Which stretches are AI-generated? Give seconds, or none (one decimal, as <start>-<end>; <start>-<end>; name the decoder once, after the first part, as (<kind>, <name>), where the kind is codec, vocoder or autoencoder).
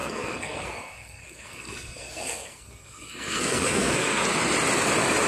0.0-4.2 (codec, SNAC)